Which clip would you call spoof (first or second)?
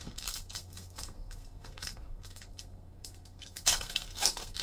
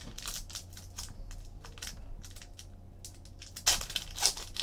first